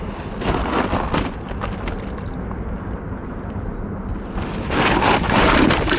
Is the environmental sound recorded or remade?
recorded